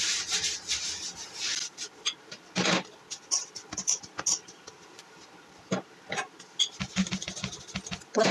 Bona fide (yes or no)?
yes